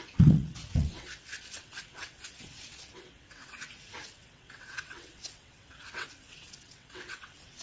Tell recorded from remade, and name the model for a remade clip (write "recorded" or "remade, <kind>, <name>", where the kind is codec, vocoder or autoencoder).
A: remade, vocoder, WaveNeXt